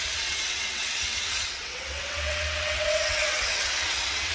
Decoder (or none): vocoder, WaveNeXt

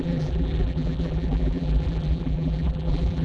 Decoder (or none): vocoder, BigVGAN v2